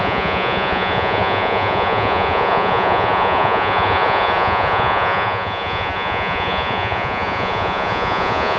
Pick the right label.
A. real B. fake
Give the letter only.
B